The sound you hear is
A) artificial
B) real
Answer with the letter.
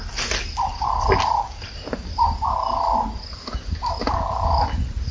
B